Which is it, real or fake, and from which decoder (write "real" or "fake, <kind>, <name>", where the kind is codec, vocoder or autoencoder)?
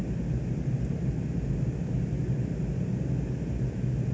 real